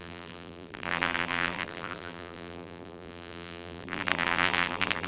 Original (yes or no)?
no